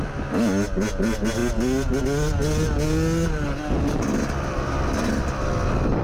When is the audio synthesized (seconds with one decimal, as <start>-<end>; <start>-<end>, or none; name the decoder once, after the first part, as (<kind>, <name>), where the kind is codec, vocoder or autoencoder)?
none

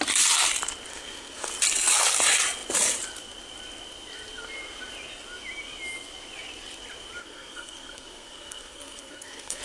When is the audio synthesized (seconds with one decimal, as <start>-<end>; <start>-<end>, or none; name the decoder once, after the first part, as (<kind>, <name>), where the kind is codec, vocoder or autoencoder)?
0.9-1.5 (codec, SNAC); 7.2-9.6

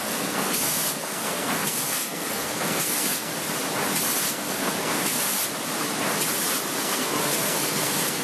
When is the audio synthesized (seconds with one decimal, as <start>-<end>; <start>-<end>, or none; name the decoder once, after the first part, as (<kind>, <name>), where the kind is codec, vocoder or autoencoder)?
0.0-3.3 (codec, SNAC); 4.2-5.3; 6.8-8.2

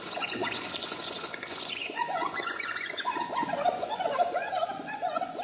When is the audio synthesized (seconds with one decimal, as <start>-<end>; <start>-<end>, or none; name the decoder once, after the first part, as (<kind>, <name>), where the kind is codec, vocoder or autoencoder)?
0.0-5.4 (vocoder, Vocos)

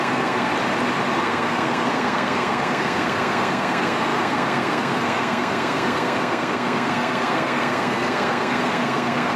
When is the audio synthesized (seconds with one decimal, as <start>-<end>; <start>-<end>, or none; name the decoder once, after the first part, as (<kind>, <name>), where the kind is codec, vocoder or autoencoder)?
0.0-0.5 (codec, SNAC); 1.2-9.4